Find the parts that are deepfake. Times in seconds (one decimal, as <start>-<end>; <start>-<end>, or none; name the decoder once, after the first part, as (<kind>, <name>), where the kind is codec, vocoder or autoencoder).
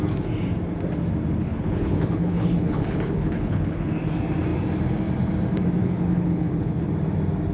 1.4-3.9 (codec, HILCodec); 5.8-6.9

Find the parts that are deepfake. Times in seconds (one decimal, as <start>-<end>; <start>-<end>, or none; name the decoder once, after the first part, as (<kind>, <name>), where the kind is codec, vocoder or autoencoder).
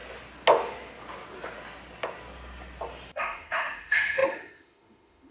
3.2-5.3 (autoencoder, DAC-VAE)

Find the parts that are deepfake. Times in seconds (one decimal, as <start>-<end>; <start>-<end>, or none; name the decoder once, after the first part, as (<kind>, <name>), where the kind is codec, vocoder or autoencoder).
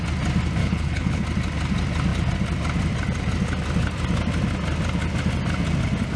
0.6-1.2 (codec, HILCodec)